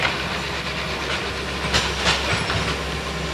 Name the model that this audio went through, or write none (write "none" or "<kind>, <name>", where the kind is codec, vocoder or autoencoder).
none